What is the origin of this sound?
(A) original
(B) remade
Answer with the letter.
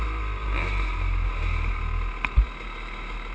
A